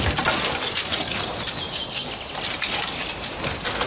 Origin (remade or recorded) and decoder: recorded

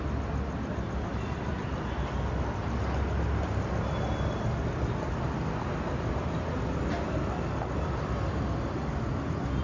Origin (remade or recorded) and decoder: recorded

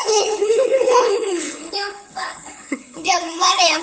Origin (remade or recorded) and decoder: remade, codec, HILCodec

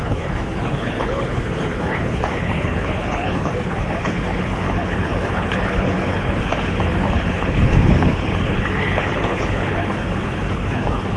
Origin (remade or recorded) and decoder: remade, codec, HILCodec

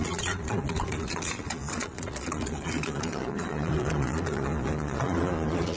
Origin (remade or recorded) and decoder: remade, vocoder, Vocos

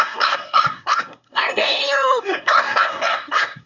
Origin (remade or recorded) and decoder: remade, codec, SNAC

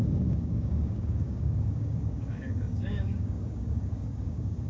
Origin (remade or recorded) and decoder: remade, codec, DAC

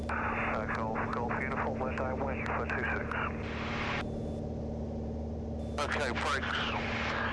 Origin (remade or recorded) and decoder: recorded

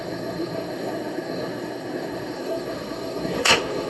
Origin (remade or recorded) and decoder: remade, codec, SNAC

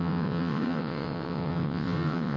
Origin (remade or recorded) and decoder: remade, vocoder, WaveNeXt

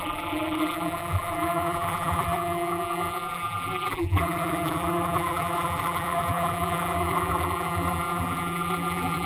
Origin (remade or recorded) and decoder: remade, vocoder, BigVGAN v2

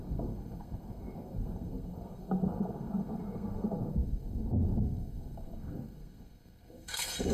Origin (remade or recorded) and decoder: remade, codec, SNAC